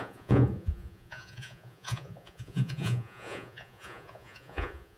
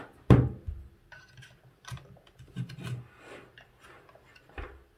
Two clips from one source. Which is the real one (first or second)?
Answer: second